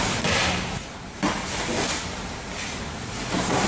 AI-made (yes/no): no